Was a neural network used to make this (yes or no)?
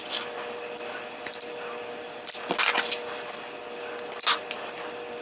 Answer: no